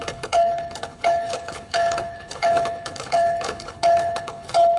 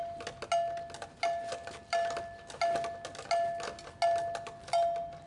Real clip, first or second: second